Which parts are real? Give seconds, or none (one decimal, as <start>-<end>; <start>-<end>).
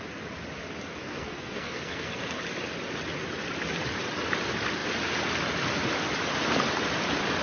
0.0-1.1; 2.4-7.4